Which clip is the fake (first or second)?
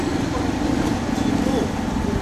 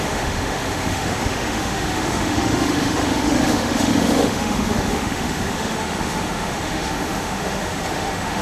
second